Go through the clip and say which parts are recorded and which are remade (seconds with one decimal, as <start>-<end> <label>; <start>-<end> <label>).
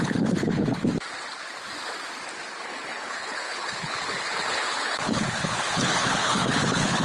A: 0.0-0.9 remade; 0.9-2.6 recorded; 2.6-7.0 remade